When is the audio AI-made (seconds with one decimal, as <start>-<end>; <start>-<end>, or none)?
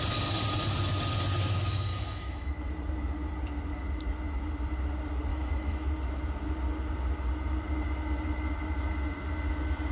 1.9-2.5; 5.3-5.9